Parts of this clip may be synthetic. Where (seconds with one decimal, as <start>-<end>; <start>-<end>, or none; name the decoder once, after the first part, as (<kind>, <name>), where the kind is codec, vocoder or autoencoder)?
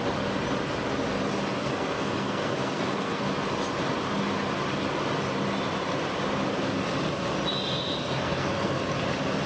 1.6-3.2 (codec, SNAC); 8.0-8.8